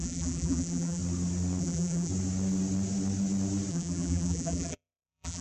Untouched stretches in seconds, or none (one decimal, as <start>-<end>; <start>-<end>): 1.0-1.6; 2.1-3.7

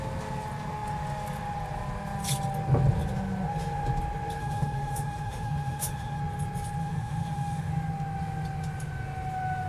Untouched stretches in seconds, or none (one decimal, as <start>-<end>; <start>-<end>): 0.0-4.4; 6.2-6.8; 7.7-9.7

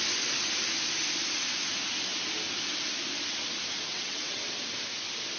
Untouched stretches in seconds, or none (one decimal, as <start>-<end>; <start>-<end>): 0.0-3.9; 4.4-5.4

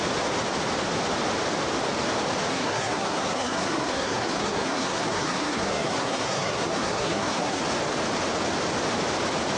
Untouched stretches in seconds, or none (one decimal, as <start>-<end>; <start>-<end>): 0.0-2.5; 7.6-9.6

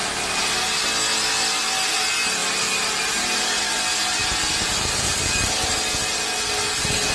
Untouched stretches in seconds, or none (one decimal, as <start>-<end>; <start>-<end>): 0.0-4.2; 5.7-7.1